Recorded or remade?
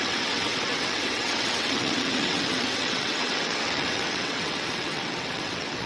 remade